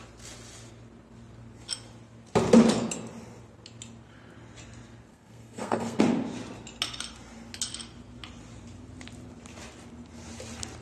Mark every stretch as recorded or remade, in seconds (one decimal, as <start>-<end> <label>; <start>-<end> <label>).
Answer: 0.0-5.1 recorded; 5.1-6.0 remade; 6.0-10.8 recorded